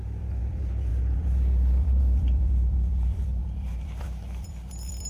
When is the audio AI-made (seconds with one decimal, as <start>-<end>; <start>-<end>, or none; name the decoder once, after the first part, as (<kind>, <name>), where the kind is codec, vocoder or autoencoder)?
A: 0.0-5.1 (vocoder, BigVGAN v2)